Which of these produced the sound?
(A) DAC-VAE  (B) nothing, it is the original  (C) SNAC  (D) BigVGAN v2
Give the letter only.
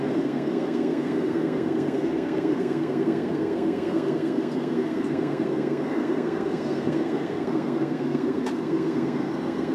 C